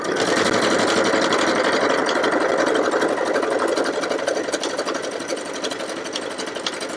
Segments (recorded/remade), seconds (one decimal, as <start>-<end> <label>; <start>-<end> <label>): 0.0-7.0 recorded